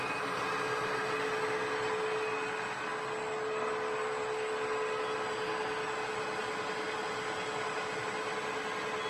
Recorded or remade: recorded